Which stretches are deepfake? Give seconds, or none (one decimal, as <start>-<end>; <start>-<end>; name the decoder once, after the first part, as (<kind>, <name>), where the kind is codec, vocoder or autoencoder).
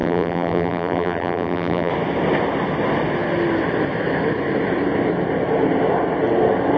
0.0-1.9 (vocoder, BigVGAN v2)